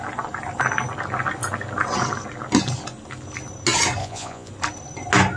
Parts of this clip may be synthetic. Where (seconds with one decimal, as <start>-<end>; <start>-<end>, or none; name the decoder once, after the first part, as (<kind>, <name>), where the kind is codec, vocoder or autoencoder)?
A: 4.0-4.5 (vocoder, Vocos)